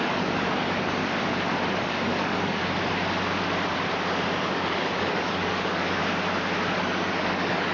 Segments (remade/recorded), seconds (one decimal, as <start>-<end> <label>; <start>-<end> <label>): 0.0-1.0 remade; 1.0-1.8 recorded; 1.8-2.6 remade; 2.6-4.4 recorded; 4.4-6.0 remade; 6.0-6.8 recorded; 6.8-7.7 remade